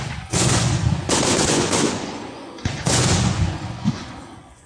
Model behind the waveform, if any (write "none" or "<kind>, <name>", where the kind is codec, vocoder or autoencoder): vocoder, Vocos